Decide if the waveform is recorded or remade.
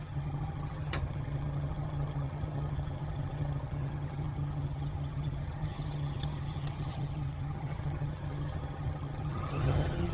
remade